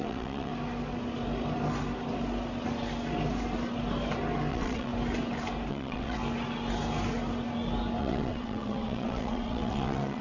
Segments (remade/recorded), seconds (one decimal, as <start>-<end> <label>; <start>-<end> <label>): 0.0-0.5 remade; 0.5-4.5 recorded; 4.5-4.9 remade; 4.9-5.7 recorded; 5.7-6.2 remade; 6.2-8.0 recorded; 8.0-10.2 remade